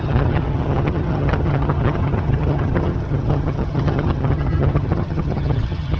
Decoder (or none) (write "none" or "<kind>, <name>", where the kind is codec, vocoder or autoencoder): vocoder, HiFi-GAN